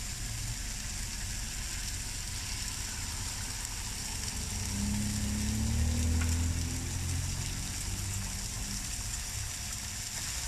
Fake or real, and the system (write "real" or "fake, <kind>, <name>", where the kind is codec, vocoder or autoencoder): real